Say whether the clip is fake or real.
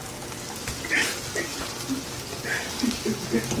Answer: real